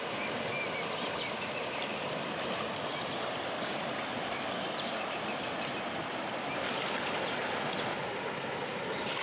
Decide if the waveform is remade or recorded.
recorded